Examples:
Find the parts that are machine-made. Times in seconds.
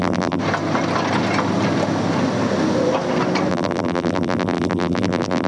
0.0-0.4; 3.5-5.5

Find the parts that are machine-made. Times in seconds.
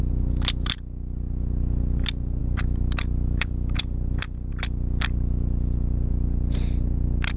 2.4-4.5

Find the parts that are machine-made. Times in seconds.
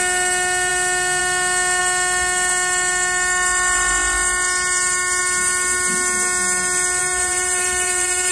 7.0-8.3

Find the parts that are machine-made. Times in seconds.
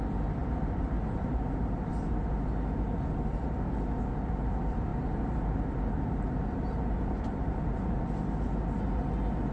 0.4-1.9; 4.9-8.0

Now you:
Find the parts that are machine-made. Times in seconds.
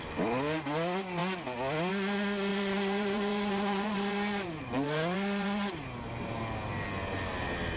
2.5-6.4